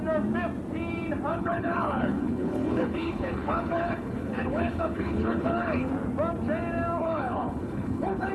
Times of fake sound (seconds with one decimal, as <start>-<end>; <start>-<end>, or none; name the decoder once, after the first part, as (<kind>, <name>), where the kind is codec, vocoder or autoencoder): 1.3-5.9 (codec, HILCodec); 7.0-8.3